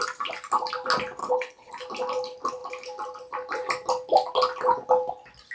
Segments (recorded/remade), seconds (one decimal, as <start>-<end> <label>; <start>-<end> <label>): 0.0-1.2 recorded; 1.2-1.7 remade; 1.7-5.5 recorded